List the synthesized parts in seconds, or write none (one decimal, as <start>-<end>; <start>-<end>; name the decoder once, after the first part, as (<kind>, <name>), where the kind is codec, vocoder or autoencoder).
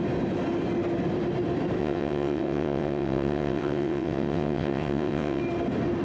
1.8-5.4 (vocoder, WaveNeXt)